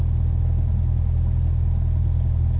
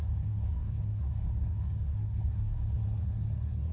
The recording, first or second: first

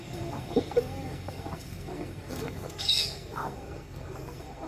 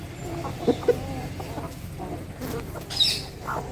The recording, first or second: second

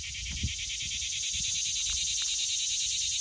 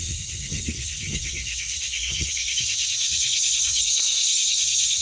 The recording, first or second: first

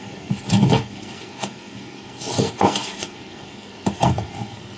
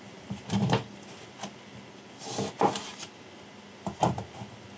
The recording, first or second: second